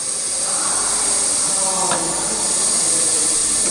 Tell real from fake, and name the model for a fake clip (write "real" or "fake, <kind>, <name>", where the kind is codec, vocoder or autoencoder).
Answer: real